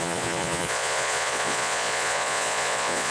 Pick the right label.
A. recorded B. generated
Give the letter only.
B